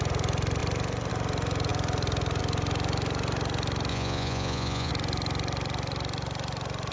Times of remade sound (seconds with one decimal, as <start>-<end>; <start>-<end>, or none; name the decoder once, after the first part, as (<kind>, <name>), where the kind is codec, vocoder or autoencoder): 3.9-4.9 (vocoder, Vocos)